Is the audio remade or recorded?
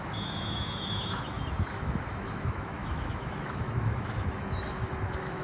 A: remade